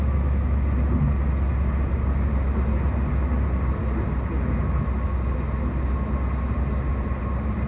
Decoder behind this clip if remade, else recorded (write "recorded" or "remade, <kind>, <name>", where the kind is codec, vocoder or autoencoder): recorded